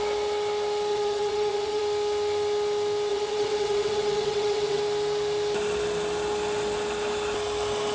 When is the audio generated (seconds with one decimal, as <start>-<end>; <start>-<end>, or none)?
0.9-1.8; 3.1-4.8